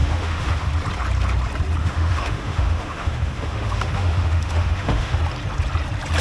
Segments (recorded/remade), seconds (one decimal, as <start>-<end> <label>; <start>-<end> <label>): 0.0-0.7 remade; 0.7-1.8 recorded; 1.8-5.2 remade; 5.2-6.2 recorded